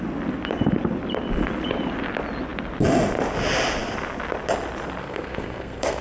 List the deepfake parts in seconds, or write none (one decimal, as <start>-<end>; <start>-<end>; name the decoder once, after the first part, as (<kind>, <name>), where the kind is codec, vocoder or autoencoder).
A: 5.0-6.0 (codec, SNAC)